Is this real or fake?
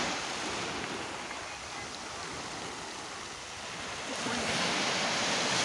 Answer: real